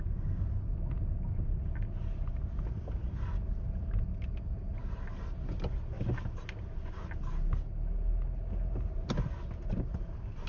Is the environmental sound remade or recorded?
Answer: recorded